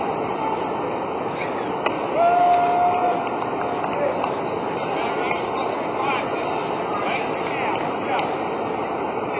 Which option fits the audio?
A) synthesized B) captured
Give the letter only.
B